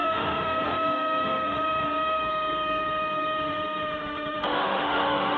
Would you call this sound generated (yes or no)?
yes